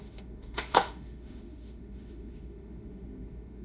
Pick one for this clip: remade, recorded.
remade